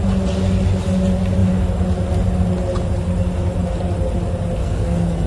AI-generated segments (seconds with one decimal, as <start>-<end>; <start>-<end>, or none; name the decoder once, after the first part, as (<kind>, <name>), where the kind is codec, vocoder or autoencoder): 4.6-5.3 (codec, SNAC)